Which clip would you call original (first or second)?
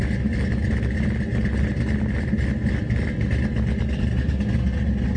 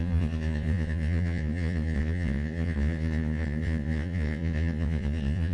first